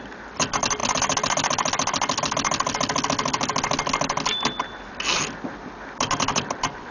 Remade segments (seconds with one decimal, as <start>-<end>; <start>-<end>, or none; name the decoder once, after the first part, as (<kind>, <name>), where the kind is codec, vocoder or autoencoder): none